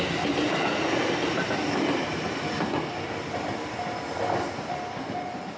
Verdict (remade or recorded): recorded